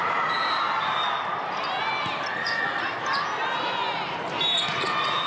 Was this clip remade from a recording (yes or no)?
no